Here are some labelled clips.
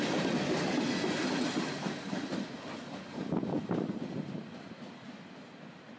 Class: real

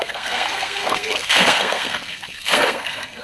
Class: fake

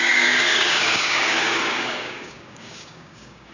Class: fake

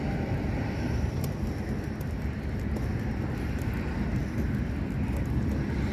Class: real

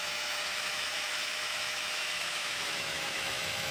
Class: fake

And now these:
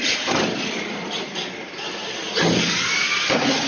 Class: real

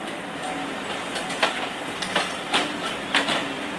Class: real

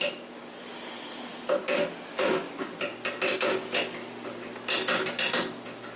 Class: real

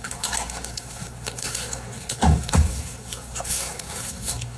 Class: fake